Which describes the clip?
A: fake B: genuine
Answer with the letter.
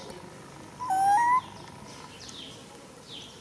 B